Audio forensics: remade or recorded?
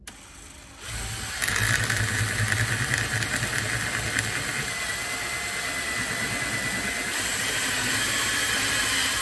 recorded